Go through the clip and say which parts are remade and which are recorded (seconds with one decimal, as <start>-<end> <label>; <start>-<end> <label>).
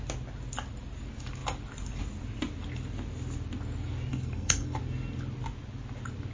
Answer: 0.0-4.1 recorded; 4.1-4.8 remade; 4.8-6.3 recorded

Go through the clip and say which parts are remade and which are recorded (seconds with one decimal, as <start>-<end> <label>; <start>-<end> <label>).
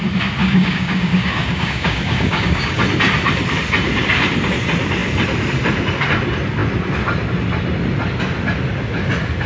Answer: 0.0-0.4 recorded; 0.4-2.8 remade; 2.8-9.5 recorded